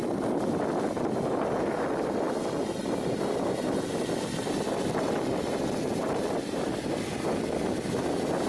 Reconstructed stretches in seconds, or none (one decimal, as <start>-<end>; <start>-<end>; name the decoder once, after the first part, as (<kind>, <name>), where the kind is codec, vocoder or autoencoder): none